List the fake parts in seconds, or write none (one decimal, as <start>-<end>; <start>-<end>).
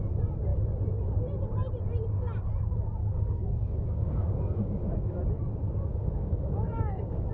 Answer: 3.0-5.2; 5.9-7.3